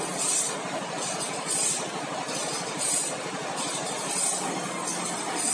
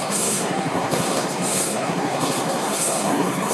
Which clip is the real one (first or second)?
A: first